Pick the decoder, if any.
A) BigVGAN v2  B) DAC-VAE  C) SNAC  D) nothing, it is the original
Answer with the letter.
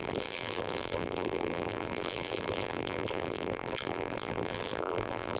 A